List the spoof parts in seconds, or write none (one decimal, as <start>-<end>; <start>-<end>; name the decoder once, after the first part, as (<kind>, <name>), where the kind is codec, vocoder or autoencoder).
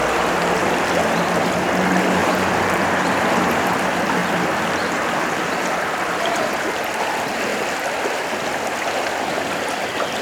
2.2-3.6 (vocoder, BigVGAN v2); 4.2-6.5